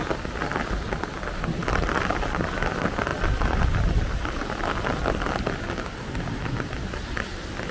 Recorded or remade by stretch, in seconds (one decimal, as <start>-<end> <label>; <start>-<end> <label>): 0.0-7.7 recorded